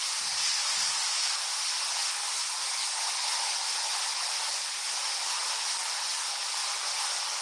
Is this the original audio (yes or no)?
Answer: yes